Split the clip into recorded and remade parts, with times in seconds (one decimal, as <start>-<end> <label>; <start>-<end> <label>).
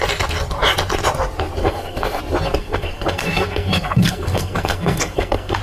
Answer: 0.0-1.6 recorded; 1.6-2.2 remade; 2.2-2.6 recorded; 2.6-5.6 remade